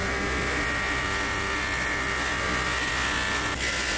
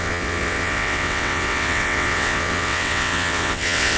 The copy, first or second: second